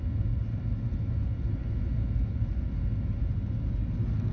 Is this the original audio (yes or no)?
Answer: yes